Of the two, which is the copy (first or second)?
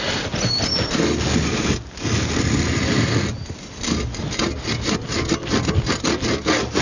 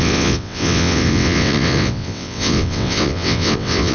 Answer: second